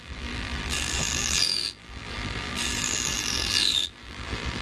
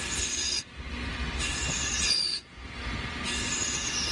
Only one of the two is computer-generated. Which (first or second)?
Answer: first